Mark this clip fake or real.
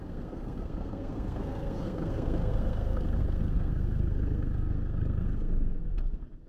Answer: fake